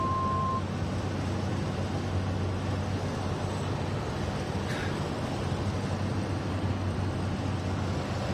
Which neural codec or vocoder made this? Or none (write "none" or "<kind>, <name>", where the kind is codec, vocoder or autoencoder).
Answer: none